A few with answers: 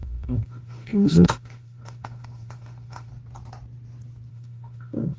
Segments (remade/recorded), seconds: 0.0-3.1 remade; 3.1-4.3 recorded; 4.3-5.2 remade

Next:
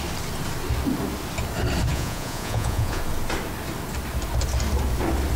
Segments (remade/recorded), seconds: 0.0-1.9 recorded; 1.9-3.0 remade; 3.0-5.4 recorded

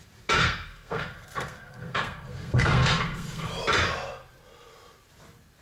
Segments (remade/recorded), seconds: 0.0-0.4 recorded; 0.4-3.5 remade; 3.5-5.6 recorded

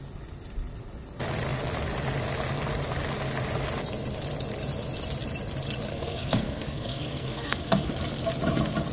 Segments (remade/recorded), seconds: 0.0-5.9 recorded; 5.9-7.9 remade; 7.9-8.9 recorded

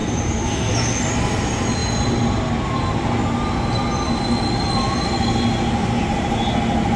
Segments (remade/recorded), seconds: 0.0-0.8 remade; 0.8-7.0 recorded

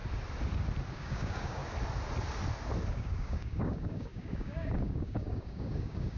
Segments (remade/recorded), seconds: 0.0-0.9 recorded; 0.9-1.6 remade; 1.6-2.9 recorded; 2.9-6.2 remade

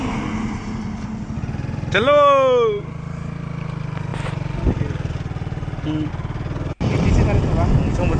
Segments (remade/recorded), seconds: 0.0-8.2 recorded

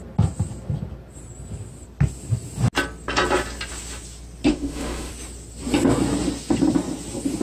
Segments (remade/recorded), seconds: 0.0-4.5 recorded; 4.5-5.1 remade; 5.1-7.4 recorded